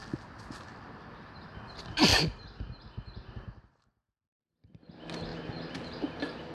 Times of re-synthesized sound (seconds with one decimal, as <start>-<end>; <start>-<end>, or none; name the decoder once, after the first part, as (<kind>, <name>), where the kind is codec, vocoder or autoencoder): none